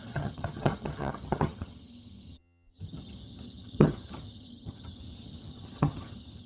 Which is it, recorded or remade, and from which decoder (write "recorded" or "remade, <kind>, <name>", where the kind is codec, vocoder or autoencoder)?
remade, vocoder, HiFi-GAN